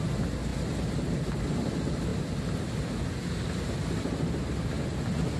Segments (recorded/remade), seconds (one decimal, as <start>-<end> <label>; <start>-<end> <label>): 0.0-5.4 recorded